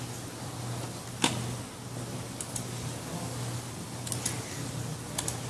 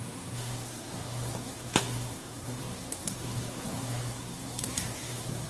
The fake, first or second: second